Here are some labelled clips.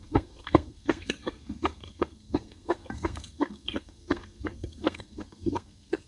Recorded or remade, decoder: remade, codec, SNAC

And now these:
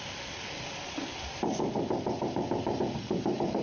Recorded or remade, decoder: recorded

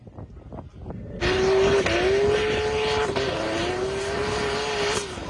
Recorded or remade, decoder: recorded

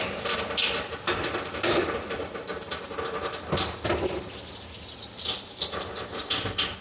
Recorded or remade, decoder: recorded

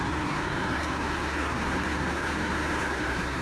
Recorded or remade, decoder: remade, codec, SNAC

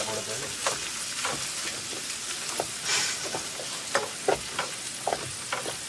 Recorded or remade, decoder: recorded